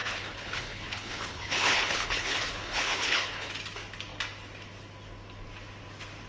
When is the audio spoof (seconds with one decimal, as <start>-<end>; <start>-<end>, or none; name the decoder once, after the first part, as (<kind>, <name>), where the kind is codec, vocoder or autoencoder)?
0.0-3.5 (codec, HILCodec)